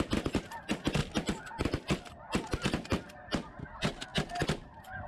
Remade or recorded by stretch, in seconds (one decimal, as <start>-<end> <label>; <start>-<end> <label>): 0.0-5.1 recorded